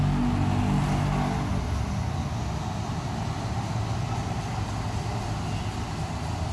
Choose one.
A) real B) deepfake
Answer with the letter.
A